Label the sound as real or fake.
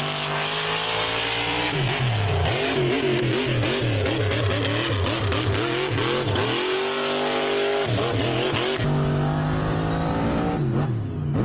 real